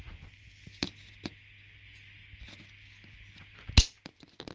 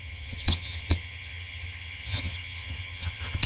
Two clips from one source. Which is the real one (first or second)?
first